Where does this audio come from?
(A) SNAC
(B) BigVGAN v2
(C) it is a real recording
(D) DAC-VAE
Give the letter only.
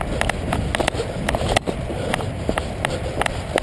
C